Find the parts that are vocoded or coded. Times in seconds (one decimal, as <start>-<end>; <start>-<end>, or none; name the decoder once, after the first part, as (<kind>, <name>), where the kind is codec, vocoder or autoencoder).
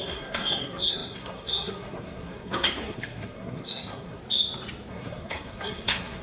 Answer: 0.0-4.2 (codec, SNAC); 4.9-6.2